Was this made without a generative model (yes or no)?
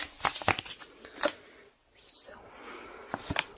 yes